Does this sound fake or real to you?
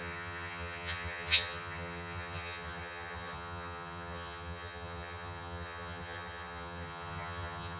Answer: fake